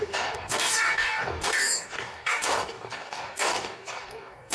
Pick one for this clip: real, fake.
fake